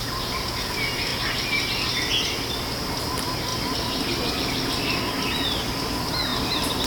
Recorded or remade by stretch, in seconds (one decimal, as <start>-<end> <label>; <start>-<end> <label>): 0.0-6.9 recorded